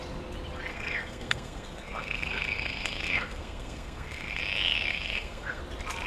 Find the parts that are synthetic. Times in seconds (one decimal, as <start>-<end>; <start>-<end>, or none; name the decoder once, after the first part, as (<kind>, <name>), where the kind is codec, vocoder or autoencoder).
0.7-4.4 (codec, SNAC); 4.9-5.6